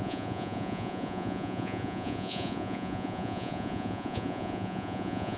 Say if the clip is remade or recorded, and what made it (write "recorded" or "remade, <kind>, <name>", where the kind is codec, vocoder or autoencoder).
remade, vocoder, Vocos